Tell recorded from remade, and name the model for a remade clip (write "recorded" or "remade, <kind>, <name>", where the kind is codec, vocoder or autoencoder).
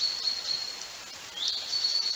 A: recorded